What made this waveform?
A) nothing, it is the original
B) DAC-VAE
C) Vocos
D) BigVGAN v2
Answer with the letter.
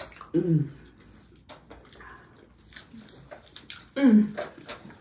A